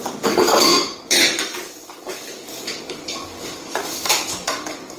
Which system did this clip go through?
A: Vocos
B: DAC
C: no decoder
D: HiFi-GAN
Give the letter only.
B